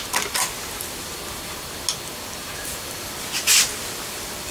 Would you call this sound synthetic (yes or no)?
no